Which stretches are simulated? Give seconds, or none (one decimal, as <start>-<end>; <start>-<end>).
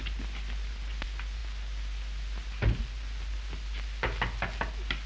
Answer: none